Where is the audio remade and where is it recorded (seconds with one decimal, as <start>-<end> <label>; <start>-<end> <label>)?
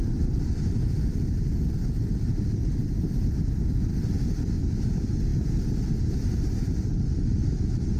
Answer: 0.0-0.5 remade; 0.5-1.8 recorded; 1.8-3.0 remade; 3.0-8.0 recorded